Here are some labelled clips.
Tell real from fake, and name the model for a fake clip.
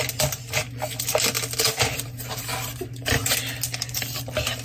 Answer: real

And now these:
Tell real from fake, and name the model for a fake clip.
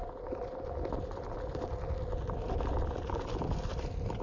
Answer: real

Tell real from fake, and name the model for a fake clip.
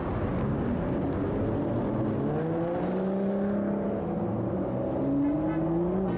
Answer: real